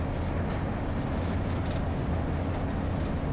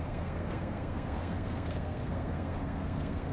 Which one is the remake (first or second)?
second